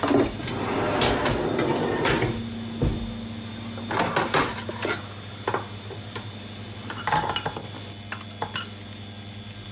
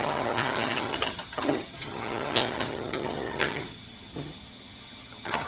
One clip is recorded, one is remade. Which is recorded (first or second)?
first